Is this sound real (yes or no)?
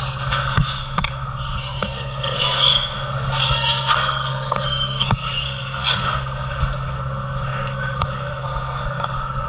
no